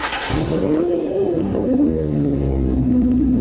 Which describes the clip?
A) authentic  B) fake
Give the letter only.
B